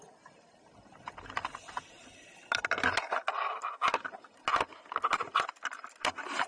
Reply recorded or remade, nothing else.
recorded